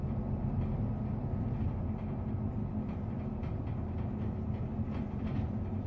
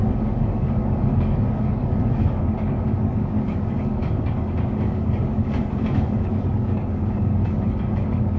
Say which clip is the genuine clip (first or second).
first